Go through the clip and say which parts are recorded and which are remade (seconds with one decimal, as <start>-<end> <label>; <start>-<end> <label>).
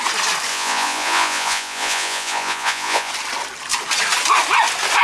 0.0-0.5 recorded; 0.5-3.1 remade; 3.1-5.0 recorded